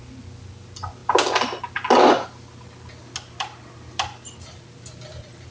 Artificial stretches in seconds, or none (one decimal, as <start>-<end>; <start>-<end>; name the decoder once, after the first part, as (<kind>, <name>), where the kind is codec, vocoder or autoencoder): none